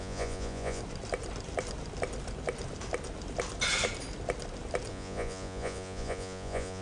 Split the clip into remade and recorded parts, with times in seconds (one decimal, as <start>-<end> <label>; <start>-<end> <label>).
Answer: 0.0-0.8 remade; 0.8-4.9 recorded; 4.9-6.8 remade